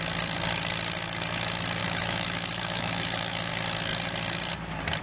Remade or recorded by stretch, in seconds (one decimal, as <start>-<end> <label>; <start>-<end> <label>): 0.0-1.8 recorded; 1.8-3.5 remade; 3.5-5.0 recorded